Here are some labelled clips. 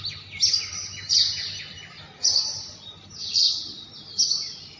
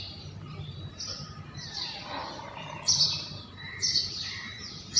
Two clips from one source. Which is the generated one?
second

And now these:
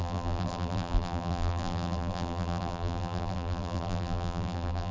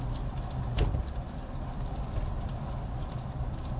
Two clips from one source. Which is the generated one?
first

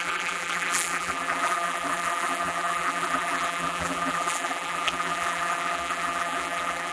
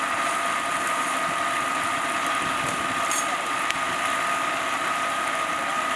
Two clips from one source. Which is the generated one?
first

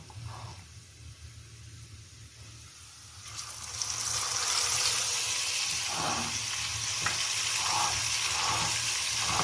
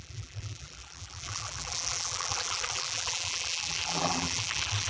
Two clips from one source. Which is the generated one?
second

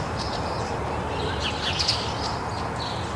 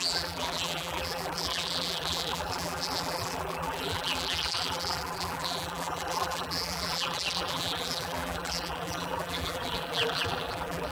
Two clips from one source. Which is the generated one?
second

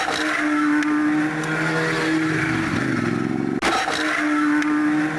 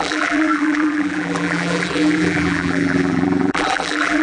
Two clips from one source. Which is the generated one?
second